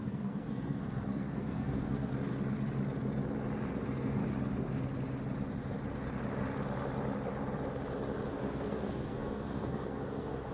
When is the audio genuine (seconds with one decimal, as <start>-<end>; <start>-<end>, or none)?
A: 2.3-3.7; 4.2-8.3